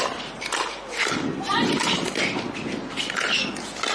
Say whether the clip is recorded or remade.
recorded